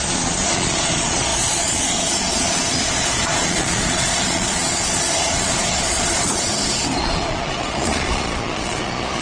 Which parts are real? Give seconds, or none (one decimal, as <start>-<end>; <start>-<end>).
6.5-7.0